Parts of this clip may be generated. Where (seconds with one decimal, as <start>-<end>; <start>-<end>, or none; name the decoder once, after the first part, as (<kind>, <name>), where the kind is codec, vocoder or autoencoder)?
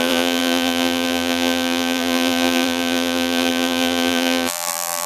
0.0-5.1 (vocoder, BigVGAN v2)